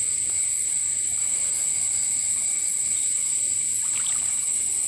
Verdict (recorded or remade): recorded